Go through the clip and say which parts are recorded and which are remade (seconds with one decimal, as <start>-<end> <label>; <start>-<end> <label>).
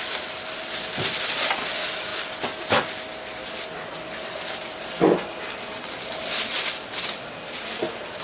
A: 0.0-8.2 recorded